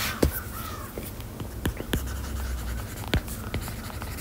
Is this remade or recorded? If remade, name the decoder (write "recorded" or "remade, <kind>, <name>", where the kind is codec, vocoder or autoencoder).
recorded